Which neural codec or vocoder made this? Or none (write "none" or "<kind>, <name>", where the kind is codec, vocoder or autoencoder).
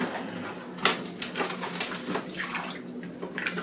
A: none